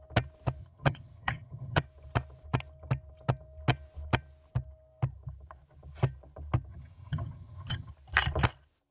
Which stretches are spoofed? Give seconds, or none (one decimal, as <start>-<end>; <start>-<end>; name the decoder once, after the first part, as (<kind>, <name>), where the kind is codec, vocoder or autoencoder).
0.6-1.8 (vocoder, HiFi-GAN); 6.7-7.9